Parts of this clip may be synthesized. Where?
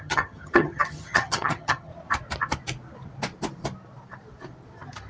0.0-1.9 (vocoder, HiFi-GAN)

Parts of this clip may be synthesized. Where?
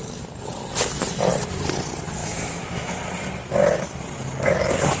2.2-3.0 (autoencoder, DAC-VAE)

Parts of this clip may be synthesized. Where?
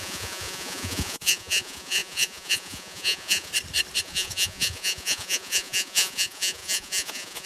0.0-3.5 (vocoder, Vocos); 4.0-7.5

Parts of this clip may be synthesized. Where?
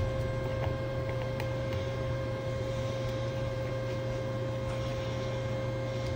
0.5-3.7 (vocoder, BigVGAN v2)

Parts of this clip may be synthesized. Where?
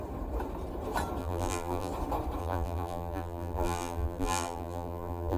1.2-1.9 (vocoder, BigVGAN v2); 2.4-5.4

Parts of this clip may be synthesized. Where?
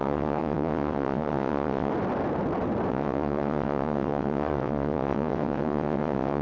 0.0-1.9 (vocoder, WaveNeXt); 2.9-6.4